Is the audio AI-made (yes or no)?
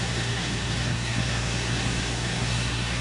yes